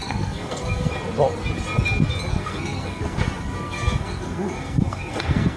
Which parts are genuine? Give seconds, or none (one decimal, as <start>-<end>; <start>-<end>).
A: 0.9-2.3